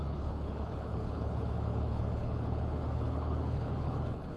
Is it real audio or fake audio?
fake